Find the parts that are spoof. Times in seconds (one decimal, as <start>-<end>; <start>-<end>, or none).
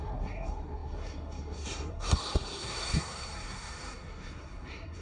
0.0-5.0